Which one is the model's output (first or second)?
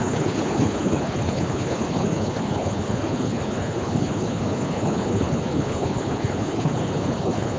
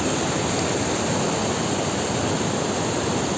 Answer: first